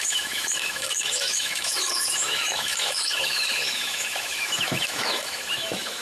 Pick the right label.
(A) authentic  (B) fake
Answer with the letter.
B